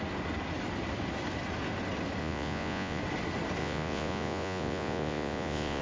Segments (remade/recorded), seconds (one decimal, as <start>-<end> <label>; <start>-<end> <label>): 0.0-2.2 recorded; 2.2-3.0 remade; 3.0-3.6 recorded; 3.6-5.8 remade